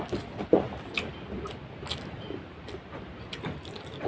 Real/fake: real